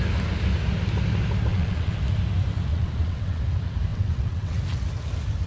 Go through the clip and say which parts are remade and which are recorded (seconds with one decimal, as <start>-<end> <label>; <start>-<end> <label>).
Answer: 0.0-1.5 recorded; 1.5-2.0 remade; 2.0-2.7 recorded; 2.7-3.4 remade; 3.4-3.9 recorded; 3.9-4.6 remade; 4.6-5.5 recorded